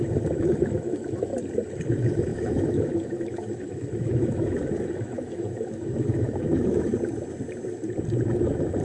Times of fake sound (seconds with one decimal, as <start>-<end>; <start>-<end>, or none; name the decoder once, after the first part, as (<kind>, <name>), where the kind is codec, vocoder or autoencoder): 0.0-1.3 (autoencoder, DAC-VAE); 1.8-6.9; 8.3-8.8